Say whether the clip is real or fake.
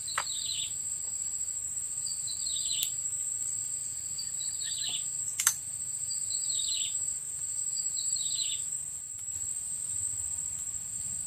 fake